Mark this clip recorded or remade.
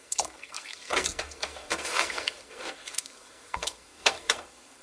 remade